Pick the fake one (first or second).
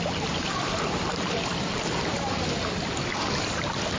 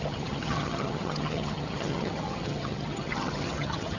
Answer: second